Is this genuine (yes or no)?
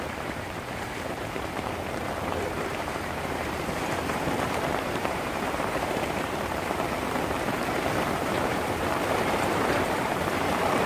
no